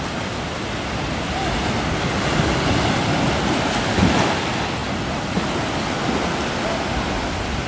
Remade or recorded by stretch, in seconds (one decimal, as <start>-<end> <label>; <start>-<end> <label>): 0.0-7.7 recorded